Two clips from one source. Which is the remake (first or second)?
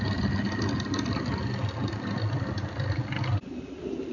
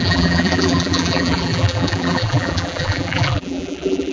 second